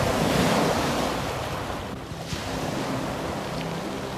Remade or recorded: recorded